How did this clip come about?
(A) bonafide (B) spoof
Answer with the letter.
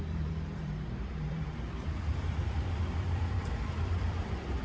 B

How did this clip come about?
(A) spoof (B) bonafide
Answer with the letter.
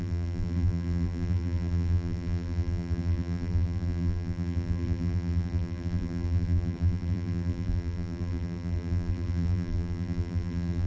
A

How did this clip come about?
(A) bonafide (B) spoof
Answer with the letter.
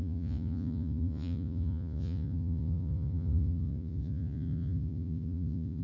B